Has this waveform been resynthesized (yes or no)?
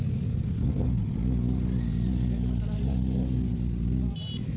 no